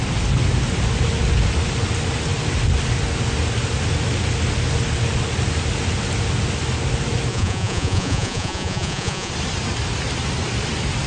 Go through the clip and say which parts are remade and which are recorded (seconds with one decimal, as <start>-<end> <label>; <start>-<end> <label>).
0.0-7.3 recorded; 7.3-9.3 remade; 9.3-11.1 recorded